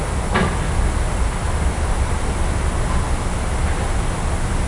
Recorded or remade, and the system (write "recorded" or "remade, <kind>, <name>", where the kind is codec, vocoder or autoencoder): recorded